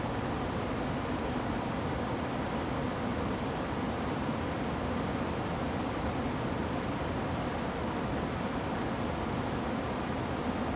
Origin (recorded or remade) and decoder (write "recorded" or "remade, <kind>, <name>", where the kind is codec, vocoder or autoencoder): recorded